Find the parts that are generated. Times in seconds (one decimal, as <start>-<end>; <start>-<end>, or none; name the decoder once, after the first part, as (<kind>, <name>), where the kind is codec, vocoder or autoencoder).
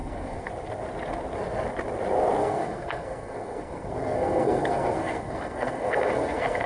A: 0.0-0.5 (codec, SNAC); 2.4-6.7